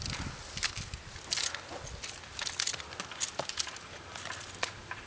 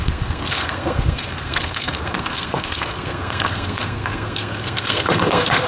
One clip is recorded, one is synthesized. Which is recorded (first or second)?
first